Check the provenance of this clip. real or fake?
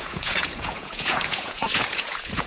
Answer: fake